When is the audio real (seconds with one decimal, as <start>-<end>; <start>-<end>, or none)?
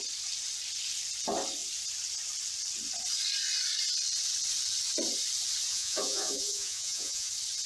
0.0-5.7; 7.3-7.7